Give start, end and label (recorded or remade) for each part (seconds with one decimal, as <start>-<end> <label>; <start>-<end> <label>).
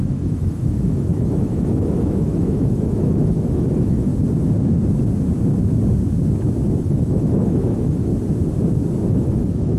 0.0-4.1 remade; 4.1-6.8 recorded; 6.8-8.1 remade; 8.1-9.1 recorded; 9.1-9.8 remade